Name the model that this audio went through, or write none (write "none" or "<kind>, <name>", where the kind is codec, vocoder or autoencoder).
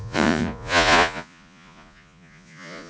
vocoder, Vocos